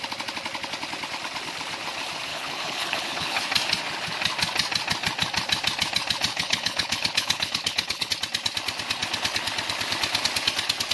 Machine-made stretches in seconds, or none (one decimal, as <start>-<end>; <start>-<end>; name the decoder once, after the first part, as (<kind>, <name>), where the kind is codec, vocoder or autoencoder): 2.3-3.4 (codec, HILCodec); 6.3-8.1